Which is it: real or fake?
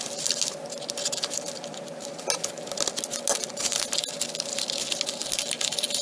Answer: real